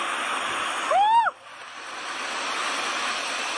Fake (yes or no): no